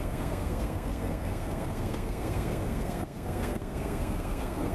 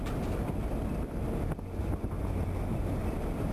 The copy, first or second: first